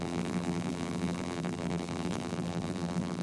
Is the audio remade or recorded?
remade